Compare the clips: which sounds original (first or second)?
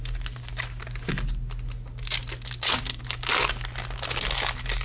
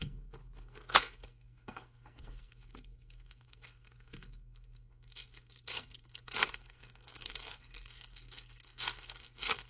first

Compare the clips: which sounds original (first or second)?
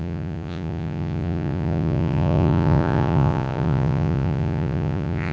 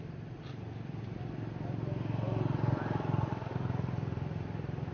second